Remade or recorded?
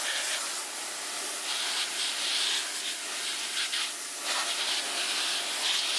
recorded